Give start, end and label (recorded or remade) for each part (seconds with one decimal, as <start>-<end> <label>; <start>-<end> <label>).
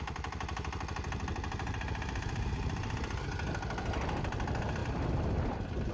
0.0-5.9 recorded